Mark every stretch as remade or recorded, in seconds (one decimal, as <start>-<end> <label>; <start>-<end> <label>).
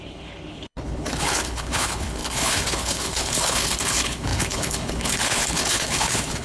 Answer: 0.0-6.4 remade